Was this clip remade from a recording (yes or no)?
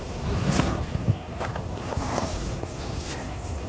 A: yes